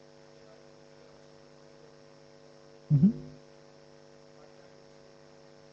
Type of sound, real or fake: real